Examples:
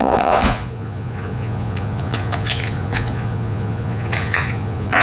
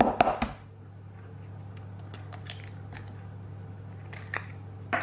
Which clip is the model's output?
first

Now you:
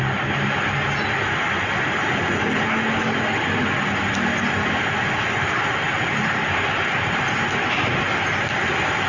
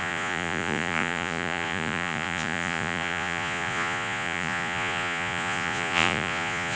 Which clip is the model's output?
second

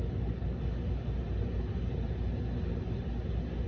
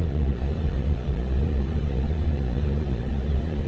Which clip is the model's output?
second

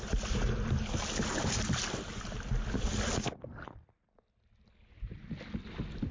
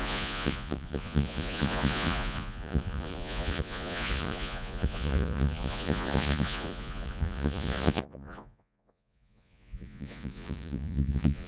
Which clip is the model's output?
second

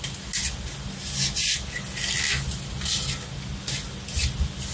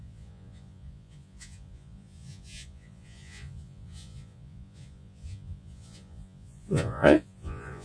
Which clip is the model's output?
second